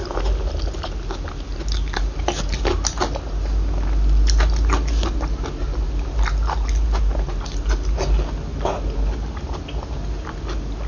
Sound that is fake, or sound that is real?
real